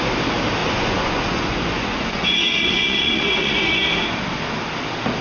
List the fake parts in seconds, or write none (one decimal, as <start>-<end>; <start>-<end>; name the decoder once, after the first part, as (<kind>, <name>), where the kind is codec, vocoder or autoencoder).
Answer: 0.6-3.7 (vocoder, Vocos)